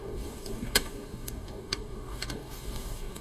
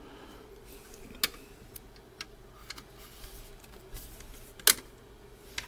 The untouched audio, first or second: second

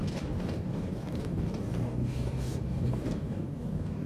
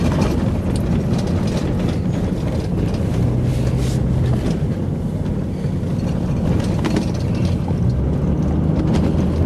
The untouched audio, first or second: second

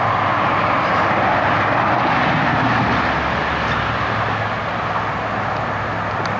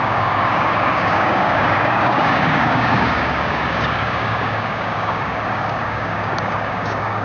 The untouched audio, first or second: first